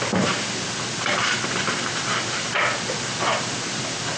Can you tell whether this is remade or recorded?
recorded